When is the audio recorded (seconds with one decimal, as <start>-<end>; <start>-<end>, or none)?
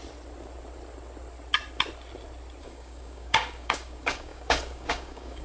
0.0-2.6